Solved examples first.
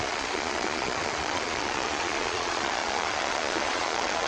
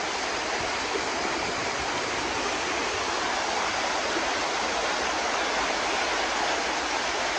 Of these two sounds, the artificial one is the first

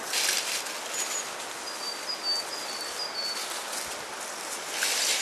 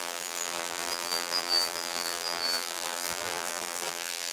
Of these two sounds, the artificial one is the second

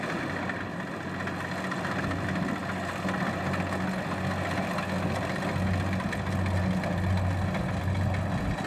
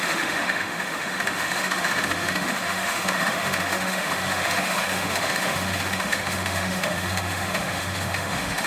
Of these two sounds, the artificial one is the second